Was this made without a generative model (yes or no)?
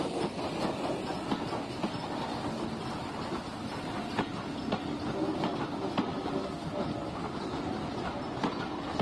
yes